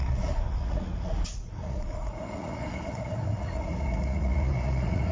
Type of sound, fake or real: fake